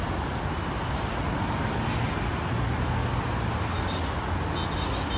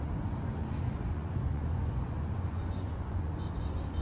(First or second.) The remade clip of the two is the second